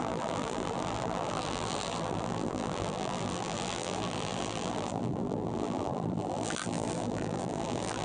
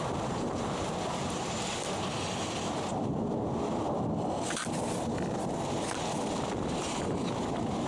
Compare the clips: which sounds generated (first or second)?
first